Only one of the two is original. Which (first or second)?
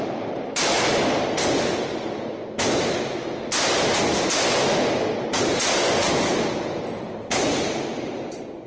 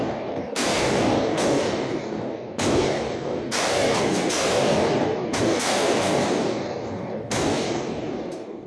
first